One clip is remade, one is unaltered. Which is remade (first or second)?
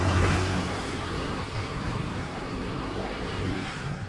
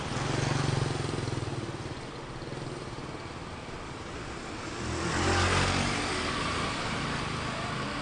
first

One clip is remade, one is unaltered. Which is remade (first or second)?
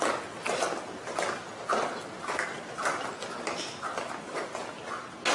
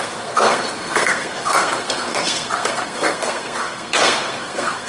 second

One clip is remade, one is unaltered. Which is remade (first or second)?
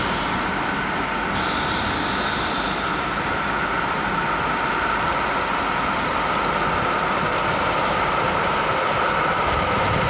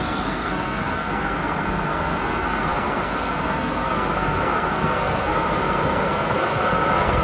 second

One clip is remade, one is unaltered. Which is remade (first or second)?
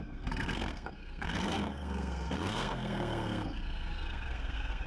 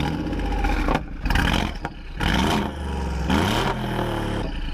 first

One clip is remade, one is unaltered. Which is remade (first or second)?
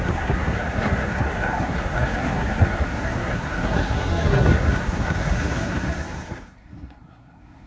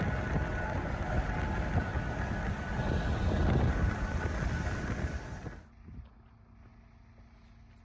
first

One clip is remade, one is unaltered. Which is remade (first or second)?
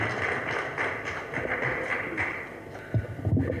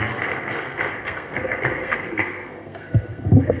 second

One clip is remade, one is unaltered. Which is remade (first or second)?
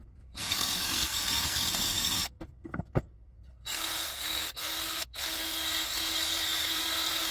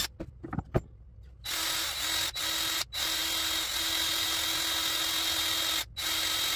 first